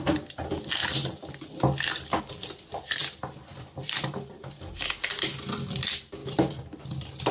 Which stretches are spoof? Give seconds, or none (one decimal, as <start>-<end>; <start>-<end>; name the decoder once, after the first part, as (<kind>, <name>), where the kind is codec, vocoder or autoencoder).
0.0-0.8 (vocoder, BigVGAN v2); 2.2-6.2